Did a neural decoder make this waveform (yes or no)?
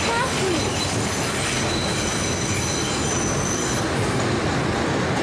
no